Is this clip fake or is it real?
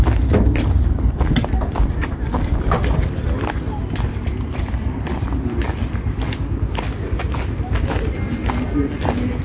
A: real